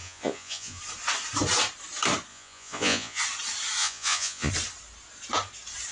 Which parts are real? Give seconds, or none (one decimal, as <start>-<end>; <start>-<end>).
0.8-2.3; 3.2-3.8; 4.5-5.9